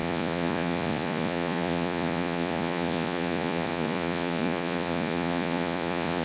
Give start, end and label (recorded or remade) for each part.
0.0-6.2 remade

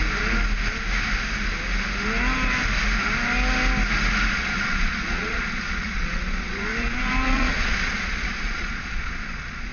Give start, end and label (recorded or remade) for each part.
0.0-4.3 recorded; 4.3-6.7 remade; 6.7-7.2 recorded; 7.2-9.7 remade

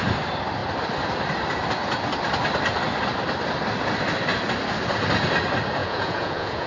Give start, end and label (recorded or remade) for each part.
0.0-5.8 recorded; 5.8-6.7 remade

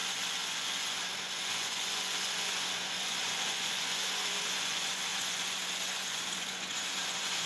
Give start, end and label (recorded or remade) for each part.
0.0-7.5 remade